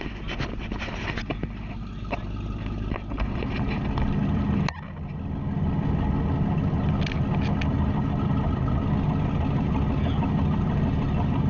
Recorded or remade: recorded